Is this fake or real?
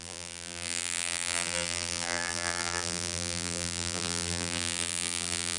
fake